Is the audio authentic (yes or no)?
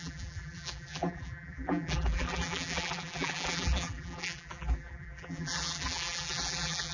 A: no